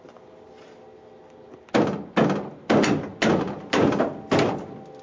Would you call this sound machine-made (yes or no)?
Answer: no